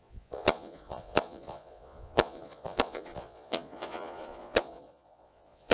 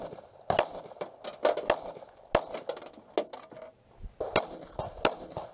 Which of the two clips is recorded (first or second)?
second